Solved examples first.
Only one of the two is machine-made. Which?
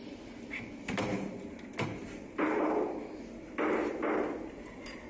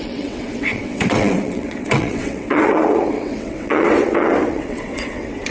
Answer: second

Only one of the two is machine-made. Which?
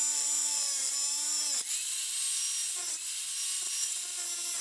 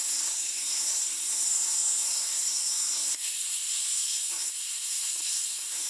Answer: second